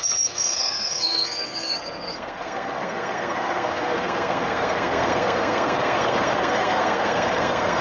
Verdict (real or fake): fake